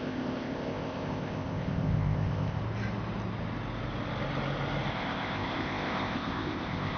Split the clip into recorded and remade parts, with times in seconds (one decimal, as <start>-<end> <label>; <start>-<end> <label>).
0.0-2.6 remade; 2.6-4.9 recorded; 4.9-7.0 remade